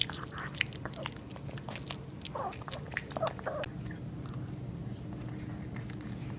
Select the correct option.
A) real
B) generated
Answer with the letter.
A